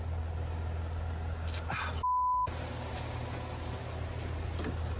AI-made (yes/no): no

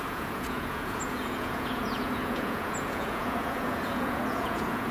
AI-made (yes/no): yes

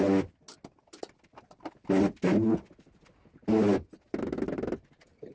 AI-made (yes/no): no